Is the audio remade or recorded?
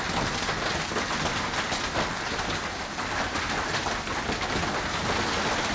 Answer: recorded